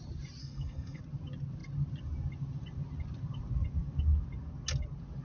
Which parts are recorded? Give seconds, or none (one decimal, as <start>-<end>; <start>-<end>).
0.0-0.4; 1.0-5.2